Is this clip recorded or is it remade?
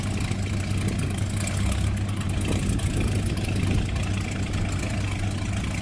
recorded